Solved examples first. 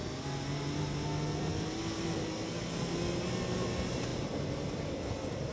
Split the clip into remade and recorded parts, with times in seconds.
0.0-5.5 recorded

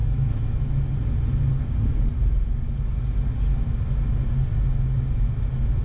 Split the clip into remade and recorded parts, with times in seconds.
0.0-0.9 remade; 0.9-5.8 recorded